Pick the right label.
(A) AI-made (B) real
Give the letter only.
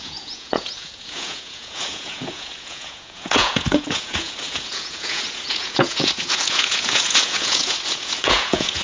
A